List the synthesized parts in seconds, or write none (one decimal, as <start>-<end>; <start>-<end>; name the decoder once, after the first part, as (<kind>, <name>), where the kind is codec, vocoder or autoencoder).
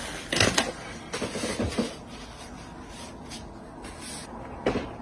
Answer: none